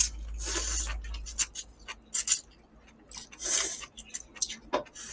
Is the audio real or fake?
real